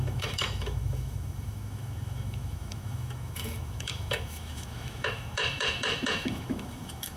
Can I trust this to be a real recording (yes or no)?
no